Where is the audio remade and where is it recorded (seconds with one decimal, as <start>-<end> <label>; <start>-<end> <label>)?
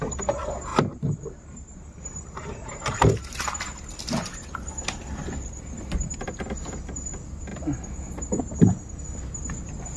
0.0-0.7 recorded; 0.7-3.3 remade; 3.3-10.0 recorded